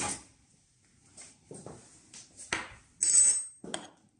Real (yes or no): yes